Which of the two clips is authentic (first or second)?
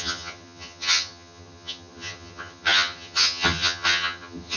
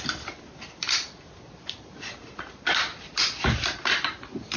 second